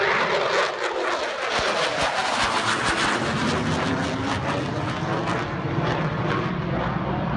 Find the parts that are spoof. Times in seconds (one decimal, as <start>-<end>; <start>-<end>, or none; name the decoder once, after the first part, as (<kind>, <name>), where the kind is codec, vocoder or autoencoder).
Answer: none